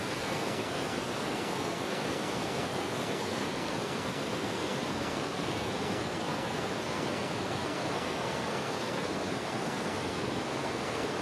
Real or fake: fake